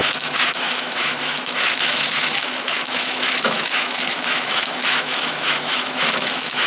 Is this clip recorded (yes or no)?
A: no